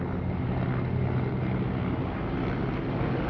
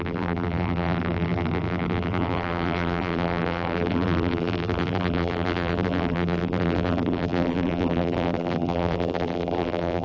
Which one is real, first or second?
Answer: first